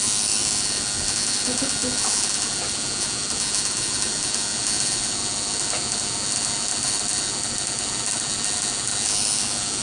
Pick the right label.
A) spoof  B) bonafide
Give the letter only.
B